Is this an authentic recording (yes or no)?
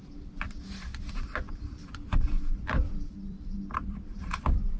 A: no